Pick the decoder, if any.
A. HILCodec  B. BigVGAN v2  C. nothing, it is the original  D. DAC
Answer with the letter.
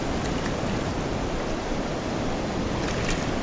C